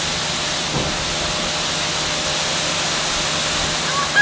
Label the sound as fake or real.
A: real